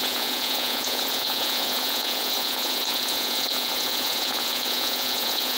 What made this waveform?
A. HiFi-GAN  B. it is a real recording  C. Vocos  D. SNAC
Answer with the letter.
C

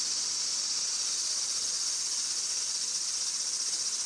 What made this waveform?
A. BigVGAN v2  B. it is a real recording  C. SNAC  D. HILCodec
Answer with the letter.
A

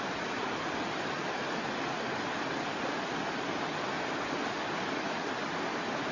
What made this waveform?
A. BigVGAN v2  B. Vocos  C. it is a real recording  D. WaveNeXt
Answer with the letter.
C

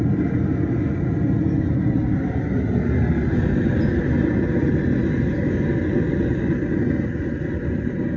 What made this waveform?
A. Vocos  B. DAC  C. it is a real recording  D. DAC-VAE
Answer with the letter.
C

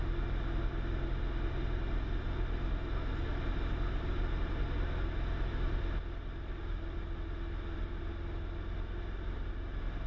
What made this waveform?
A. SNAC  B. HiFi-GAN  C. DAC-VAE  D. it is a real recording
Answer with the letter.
D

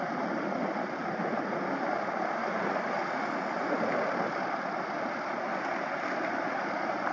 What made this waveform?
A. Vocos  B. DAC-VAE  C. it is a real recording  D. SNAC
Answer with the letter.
C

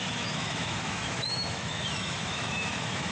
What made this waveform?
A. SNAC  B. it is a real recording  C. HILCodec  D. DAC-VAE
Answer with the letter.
D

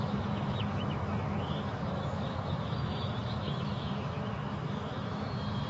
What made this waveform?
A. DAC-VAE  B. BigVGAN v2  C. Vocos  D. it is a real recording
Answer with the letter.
A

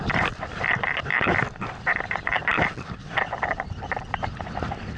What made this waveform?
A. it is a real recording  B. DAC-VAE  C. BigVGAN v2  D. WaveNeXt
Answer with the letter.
A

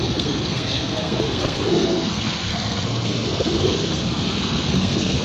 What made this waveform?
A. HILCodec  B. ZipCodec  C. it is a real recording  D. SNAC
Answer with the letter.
D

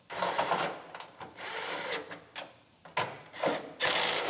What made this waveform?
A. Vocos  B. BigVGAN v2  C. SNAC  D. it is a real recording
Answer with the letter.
D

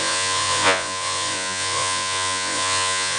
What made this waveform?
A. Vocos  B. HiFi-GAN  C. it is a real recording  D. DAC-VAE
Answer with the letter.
A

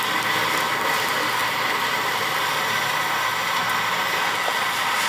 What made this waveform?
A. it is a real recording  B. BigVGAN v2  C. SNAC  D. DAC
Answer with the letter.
B